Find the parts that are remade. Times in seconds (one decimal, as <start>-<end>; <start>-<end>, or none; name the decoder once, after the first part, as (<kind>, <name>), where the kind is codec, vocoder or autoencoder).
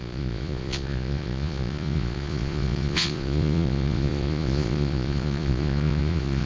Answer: 0.0-6.5 (vocoder, Vocos)